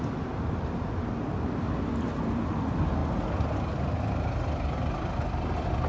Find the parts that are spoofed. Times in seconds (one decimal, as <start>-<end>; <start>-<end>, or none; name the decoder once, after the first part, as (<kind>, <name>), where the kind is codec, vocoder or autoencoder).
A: none